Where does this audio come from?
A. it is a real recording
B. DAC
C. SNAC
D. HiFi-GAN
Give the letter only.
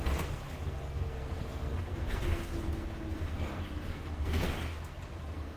C